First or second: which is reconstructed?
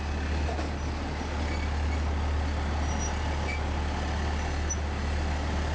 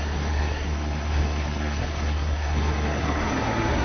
second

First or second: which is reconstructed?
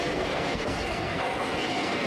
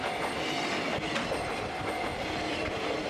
first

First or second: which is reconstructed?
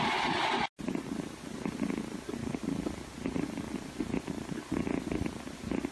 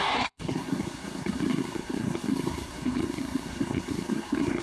second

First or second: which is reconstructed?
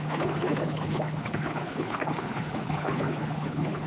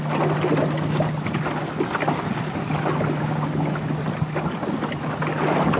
first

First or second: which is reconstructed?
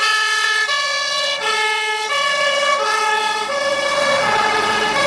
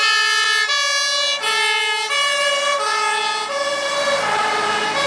first